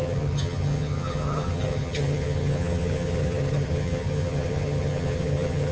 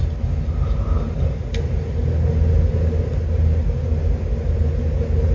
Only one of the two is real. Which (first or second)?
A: second